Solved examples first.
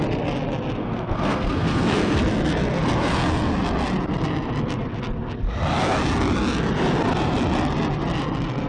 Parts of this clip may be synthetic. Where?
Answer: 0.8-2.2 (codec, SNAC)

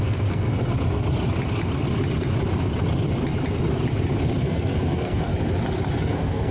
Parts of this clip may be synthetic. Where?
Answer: 0.0-0.5 (codec, SNAC); 4.4-5.3; 6.0-6.5

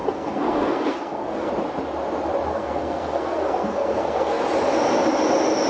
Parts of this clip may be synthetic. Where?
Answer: 0.0-1.5 (codec, SNAC); 2.5-4.4

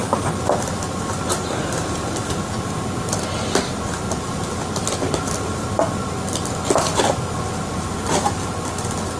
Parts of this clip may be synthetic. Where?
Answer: none

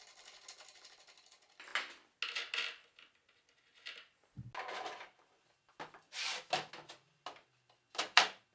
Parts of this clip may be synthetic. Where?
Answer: none

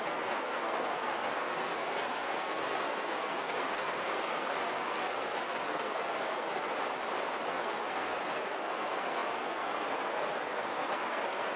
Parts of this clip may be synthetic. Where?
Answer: 0.0-6.7 (codec, SNAC); 7.5-11.6

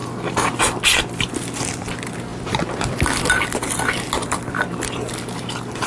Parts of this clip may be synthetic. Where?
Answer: none